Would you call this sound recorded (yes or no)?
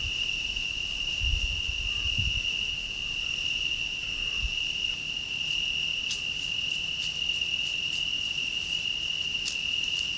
yes